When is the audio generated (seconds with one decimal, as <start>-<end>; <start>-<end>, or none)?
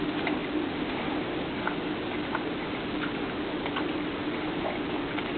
none